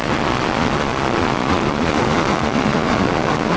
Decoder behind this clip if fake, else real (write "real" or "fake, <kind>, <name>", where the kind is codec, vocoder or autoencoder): fake, vocoder, Vocos